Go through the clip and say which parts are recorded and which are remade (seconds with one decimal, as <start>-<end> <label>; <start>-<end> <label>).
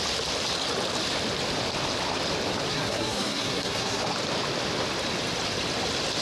0.0-2.7 recorded; 2.7-4.0 remade; 4.0-6.2 recorded